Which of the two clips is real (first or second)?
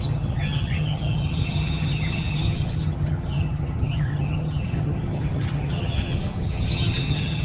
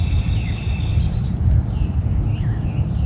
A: second